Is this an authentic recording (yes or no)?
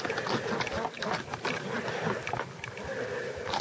yes